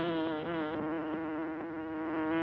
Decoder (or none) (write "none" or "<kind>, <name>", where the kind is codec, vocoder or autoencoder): none